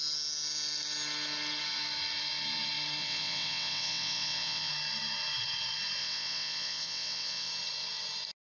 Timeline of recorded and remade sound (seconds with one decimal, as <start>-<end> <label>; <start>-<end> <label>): 0.0-3.0 recorded; 3.0-4.7 remade; 4.7-6.0 recorded; 6.0-7.5 remade; 7.5-8.5 recorded